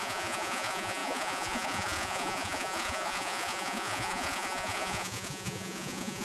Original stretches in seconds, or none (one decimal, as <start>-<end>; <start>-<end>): none

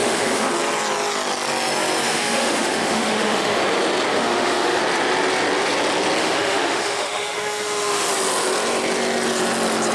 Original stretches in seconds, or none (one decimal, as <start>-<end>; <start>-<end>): 0.5-2.1; 3.6-4.1; 4.8-6.2; 8.1-9.9

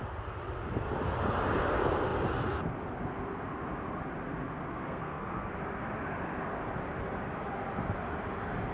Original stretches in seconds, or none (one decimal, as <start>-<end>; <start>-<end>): 0.0-4.7; 5.5-8.7

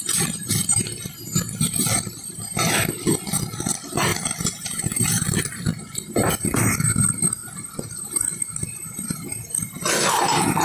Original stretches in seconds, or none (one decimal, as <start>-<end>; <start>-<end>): 0.0-4.1; 5.4-10.6

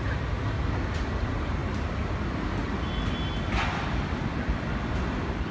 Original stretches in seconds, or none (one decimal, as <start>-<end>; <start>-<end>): 0.0-5.5

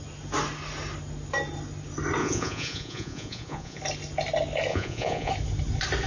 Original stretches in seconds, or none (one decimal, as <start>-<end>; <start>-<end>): 0.0-2.2; 3.8-4.7; 5.3-6.1

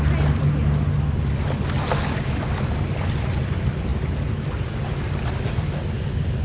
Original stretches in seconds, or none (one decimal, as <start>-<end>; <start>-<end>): 0.0-6.4